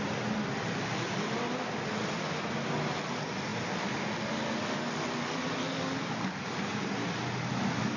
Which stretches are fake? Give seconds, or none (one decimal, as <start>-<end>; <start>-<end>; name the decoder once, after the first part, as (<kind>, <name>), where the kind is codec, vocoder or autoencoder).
none

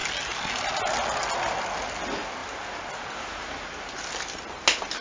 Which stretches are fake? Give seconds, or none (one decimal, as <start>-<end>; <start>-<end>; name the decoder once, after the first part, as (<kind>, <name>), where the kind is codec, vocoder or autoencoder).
none

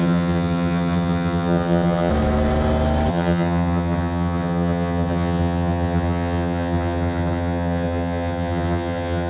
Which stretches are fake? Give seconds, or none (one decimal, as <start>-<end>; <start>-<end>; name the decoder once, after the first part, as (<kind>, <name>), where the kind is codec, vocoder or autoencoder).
0.0-2.1 (vocoder, HiFi-GAN); 3.1-9.3

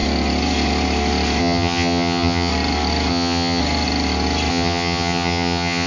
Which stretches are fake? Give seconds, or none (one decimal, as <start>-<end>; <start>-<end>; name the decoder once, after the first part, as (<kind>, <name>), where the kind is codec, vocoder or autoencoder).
1.4-2.5 (vocoder, HiFi-GAN); 3.1-3.6; 4.5-5.9

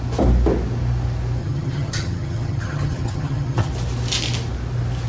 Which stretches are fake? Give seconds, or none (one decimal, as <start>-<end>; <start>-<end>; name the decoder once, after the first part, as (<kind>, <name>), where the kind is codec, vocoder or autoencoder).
1.4-3.7 (vocoder, HiFi-GAN)

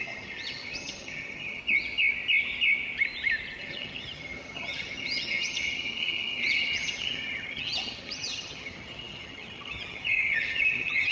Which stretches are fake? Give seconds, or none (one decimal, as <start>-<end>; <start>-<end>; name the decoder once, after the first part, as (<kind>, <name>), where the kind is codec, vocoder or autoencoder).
0.0-1.6 (vocoder, HiFi-GAN); 3.6-11.1

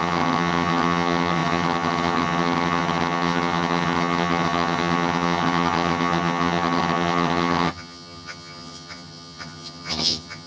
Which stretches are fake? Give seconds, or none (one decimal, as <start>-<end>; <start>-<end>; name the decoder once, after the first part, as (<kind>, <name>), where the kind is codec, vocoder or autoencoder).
0.0-10.5 (vocoder, HiFi-GAN)

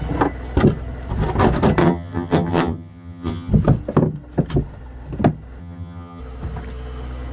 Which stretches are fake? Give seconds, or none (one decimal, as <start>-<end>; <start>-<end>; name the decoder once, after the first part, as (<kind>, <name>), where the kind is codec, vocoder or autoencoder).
1.8-3.5 (vocoder, HiFi-GAN); 5.6-6.2